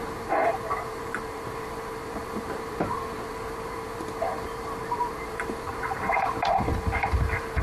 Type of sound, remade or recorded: remade